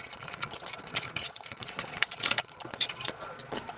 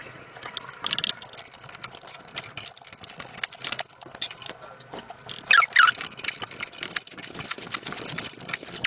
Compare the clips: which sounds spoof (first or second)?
first